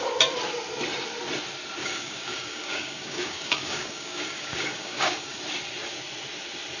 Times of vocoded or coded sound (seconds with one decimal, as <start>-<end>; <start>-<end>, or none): 1.8-5.4